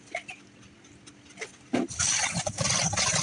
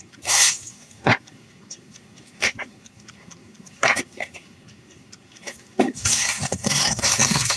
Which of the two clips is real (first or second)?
first